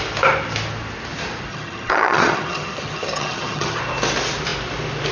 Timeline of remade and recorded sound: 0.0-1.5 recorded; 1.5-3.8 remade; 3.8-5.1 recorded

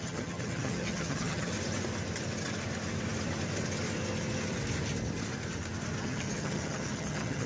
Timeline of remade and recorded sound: 0.0-1.5 remade; 1.5-6.0 recorded; 6.0-7.5 remade

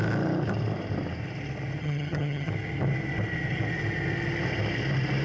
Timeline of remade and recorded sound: 0.0-1.8 recorded; 1.8-2.5 remade; 2.5-5.2 recorded

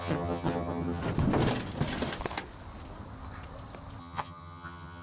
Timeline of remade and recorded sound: 0.0-1.0 remade; 1.0-4.0 recorded; 4.0-5.0 remade

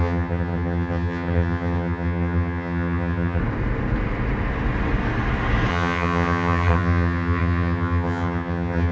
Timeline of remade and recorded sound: 0.0-3.4 remade; 3.4-5.7 recorded; 5.7-8.9 remade